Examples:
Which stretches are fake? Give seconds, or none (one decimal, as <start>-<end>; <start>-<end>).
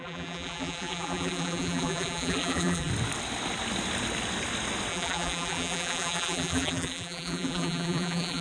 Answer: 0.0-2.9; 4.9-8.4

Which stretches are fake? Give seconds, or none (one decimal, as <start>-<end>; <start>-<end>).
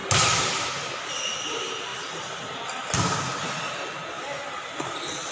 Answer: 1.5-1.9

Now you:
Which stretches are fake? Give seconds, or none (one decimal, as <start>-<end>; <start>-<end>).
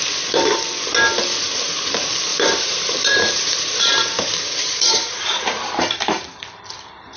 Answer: 2.3-6.6